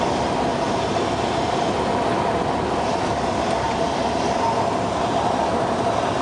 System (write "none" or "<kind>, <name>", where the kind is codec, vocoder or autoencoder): none